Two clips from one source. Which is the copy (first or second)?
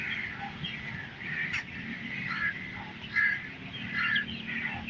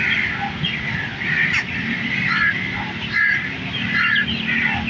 second